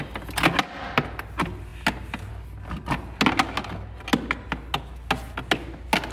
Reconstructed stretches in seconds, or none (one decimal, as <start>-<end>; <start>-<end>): none